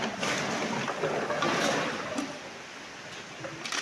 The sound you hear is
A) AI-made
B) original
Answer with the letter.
B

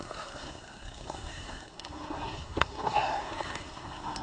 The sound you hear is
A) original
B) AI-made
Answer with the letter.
B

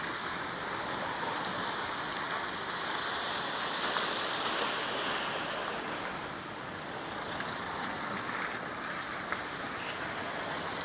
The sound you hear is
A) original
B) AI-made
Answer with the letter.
A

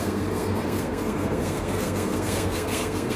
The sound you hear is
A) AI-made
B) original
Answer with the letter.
A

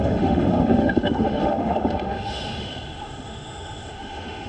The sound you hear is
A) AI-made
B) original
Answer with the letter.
A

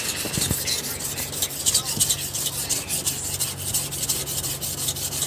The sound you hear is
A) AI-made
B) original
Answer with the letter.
B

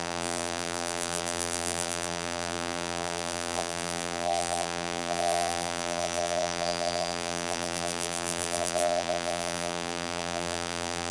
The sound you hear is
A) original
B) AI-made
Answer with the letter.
B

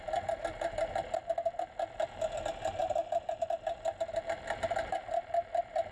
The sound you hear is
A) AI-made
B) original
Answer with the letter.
A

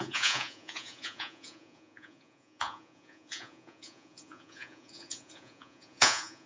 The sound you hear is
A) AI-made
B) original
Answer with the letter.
A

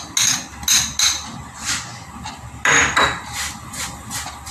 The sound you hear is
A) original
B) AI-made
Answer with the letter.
A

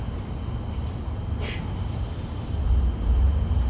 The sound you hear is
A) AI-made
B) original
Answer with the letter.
B